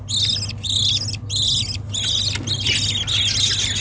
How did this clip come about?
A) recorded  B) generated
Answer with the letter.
A